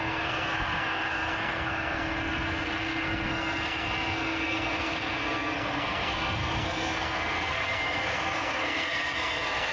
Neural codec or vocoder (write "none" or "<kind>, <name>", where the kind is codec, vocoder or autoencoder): codec, SNAC